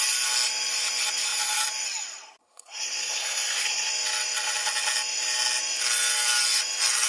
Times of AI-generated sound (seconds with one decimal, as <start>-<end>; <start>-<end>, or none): 2.4-3.9